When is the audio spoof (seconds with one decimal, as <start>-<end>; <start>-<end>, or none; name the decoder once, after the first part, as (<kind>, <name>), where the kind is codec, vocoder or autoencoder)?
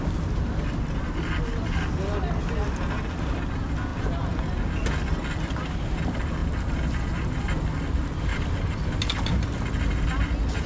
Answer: none